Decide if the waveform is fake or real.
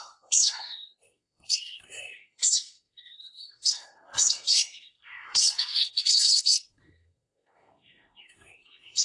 fake